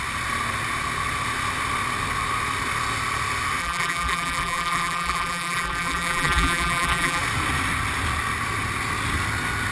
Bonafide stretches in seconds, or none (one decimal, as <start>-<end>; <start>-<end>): 0.0-3.6; 7.2-9.7